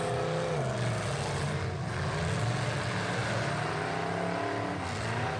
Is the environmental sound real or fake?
real